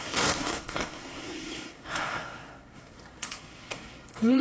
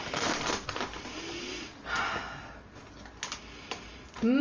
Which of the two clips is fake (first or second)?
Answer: first